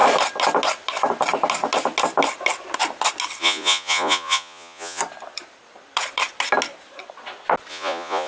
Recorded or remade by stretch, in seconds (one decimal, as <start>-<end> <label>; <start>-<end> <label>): 0.0-3.4 recorded; 3.4-5.0 remade; 5.0-7.7 recorded; 7.7-8.3 remade